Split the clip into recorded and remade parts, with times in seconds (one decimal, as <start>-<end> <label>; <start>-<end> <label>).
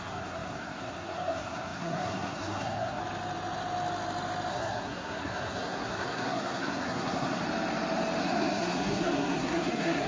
0.0-3.0 remade; 3.0-4.5 recorded; 4.5-7.4 remade; 7.4-8.2 recorded; 8.2-10.1 remade